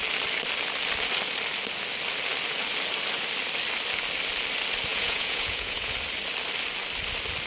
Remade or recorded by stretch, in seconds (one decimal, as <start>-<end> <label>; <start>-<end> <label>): 0.0-4.9 recorded; 4.9-5.9 remade; 5.9-7.5 recorded